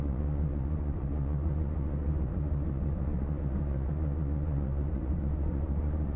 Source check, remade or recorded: remade